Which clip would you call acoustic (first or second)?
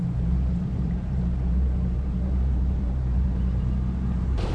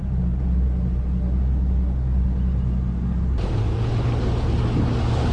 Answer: second